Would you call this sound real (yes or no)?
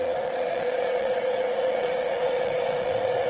no